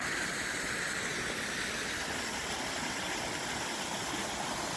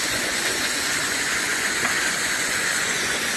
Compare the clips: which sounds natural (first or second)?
first